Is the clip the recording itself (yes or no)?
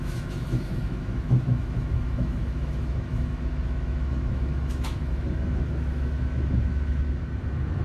no